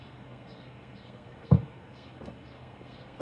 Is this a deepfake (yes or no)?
yes